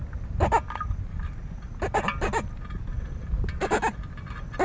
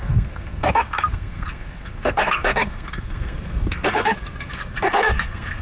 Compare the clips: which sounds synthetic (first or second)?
second